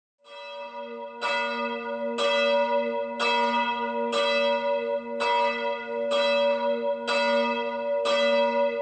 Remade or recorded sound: recorded